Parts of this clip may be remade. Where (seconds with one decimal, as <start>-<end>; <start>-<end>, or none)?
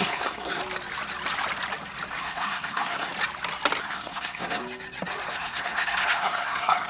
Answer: 0.0-0.6; 2.2-3.1; 3.8-4.6; 5.3-6.9